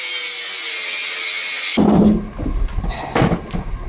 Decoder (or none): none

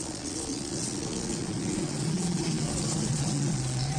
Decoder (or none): vocoder, Vocos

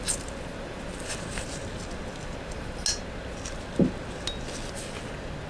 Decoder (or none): none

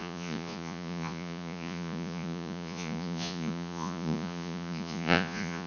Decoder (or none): vocoder, Vocos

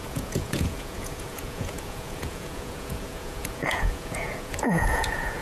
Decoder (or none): vocoder, Vocos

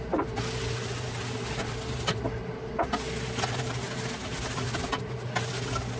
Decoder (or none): none